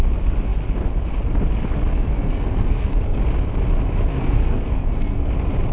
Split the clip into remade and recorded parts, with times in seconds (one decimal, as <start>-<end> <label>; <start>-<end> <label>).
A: 0.0-1.9 recorded; 1.9-3.2 remade; 3.2-4.1 recorded; 4.1-5.3 remade; 5.3-5.7 recorded